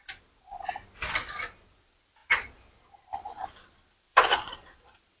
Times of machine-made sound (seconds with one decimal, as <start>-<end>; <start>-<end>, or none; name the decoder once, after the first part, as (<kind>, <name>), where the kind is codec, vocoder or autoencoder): 2.2-3.5 (vocoder, BigVGAN v2); 4.1-5.2